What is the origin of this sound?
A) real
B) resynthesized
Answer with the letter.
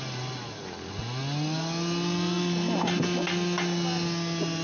A